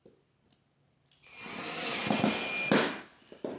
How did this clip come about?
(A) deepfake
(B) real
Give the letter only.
B